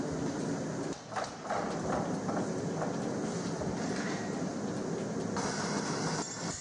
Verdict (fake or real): real